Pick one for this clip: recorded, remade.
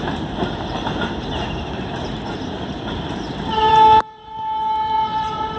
remade